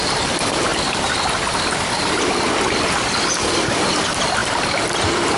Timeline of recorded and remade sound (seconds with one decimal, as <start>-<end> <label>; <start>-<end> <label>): 0.0-0.7 remade; 0.7-1.6 recorded; 1.6-4.4 remade; 4.4-5.4 recorded